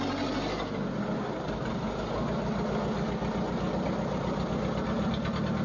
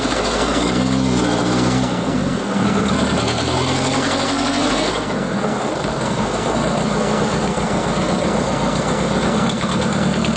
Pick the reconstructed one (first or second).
second